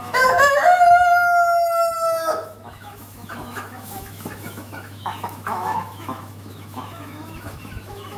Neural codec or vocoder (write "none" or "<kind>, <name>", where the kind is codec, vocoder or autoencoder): autoencoder, DAC-VAE